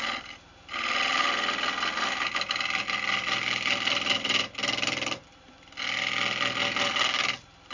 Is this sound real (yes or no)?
yes